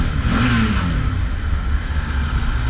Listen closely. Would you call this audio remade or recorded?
recorded